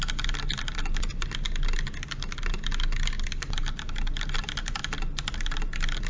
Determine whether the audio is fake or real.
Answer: real